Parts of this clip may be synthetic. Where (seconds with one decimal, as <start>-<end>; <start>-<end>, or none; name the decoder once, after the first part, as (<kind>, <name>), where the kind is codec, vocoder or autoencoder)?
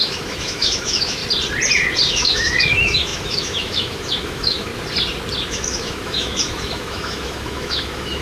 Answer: 0.0-1.2 (autoencoder, DAC-VAE); 2.1-4.7; 5.5-8.2